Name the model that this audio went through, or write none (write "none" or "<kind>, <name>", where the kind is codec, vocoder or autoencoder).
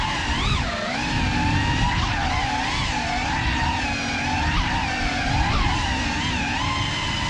none